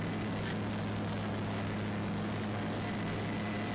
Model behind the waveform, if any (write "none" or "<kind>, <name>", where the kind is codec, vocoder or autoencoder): none